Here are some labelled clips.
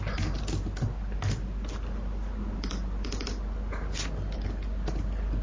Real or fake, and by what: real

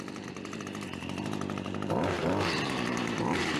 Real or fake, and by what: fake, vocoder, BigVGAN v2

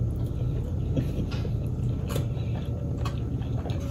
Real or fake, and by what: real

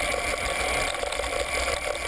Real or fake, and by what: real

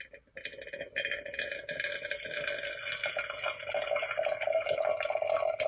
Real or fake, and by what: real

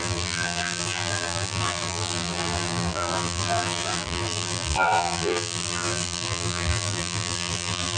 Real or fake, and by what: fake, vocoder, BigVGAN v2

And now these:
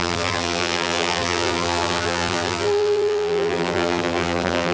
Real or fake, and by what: fake, vocoder, BigVGAN v2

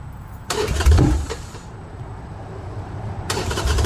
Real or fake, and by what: fake, vocoder, BigVGAN v2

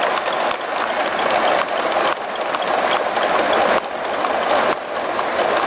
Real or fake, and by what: real